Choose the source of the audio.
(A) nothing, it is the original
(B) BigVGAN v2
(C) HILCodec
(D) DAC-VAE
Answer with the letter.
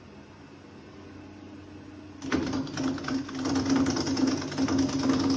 A